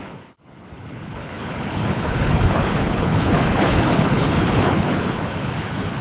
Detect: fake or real fake